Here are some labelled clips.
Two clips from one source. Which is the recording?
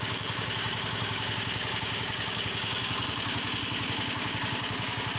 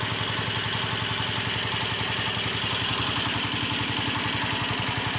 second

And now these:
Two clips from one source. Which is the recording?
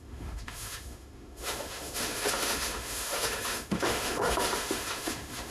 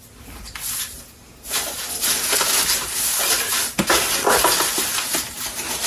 second